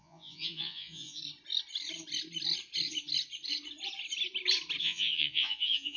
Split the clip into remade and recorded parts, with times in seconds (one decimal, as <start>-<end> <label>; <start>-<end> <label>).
0.0-1.2 remade; 1.2-4.8 recorded; 4.8-6.0 remade